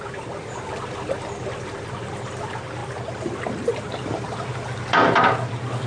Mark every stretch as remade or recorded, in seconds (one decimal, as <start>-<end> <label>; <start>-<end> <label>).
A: 0.0-2.8 remade; 2.8-3.8 recorded; 3.8-5.9 remade